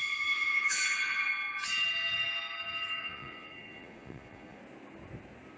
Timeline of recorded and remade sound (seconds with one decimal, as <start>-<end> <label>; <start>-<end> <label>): 0.0-1.3 remade; 1.3-3.0 recorded; 3.0-4.6 remade; 4.6-5.6 recorded